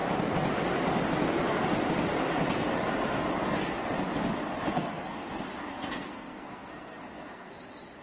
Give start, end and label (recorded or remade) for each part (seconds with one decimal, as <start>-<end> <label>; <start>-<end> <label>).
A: 0.0-4.7 recorded; 4.7-5.3 remade; 5.3-5.7 recorded; 5.7-7.5 remade; 7.5-8.0 recorded